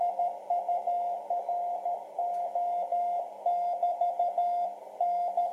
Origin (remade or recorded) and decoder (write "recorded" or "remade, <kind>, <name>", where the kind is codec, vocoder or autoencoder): recorded